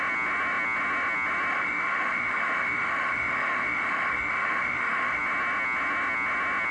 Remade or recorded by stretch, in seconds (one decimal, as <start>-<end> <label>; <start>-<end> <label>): 0.0-1.5 recorded; 1.5-5.2 remade; 5.2-6.7 recorded